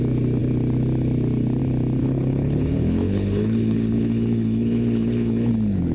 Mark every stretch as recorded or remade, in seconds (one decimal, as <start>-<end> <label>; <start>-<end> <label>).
0.0-2.0 recorded; 2.0-5.5 remade; 5.5-5.9 recorded